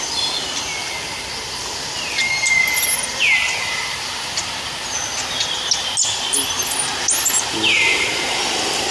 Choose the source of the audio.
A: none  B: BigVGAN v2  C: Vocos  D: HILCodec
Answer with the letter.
A